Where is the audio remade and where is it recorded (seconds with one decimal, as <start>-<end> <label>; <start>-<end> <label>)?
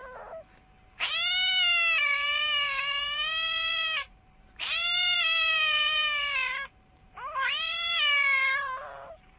0.0-2.0 recorded; 2.0-9.4 remade